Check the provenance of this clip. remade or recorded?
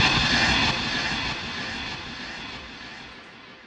recorded